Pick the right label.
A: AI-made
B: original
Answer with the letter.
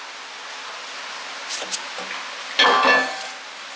B